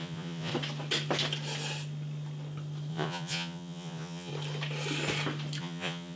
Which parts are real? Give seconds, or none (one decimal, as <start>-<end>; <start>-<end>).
0.5-2.9; 4.3-5.6